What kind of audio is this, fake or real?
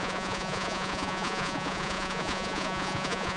fake